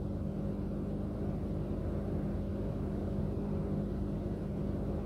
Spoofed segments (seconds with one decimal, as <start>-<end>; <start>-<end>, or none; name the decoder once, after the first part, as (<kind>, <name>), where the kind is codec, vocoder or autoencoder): 2.5-3.2 (codec, DAC)